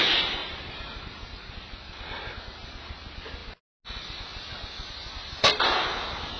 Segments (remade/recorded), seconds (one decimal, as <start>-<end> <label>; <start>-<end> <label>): 0.0-0.4 recorded; 0.4-1.5 remade; 1.5-6.4 recorded